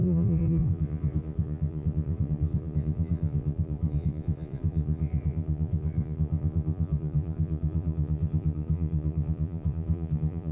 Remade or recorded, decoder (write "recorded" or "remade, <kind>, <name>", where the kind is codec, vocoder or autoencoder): remade, vocoder, Vocos